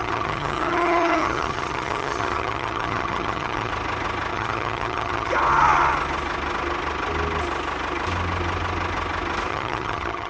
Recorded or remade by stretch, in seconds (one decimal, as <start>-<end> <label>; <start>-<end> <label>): 0.0-3.7 remade; 3.7-4.3 recorded; 4.3-5.3 remade; 5.3-9.5 recorded; 9.5-10.3 remade